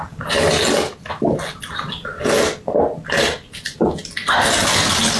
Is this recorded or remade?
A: recorded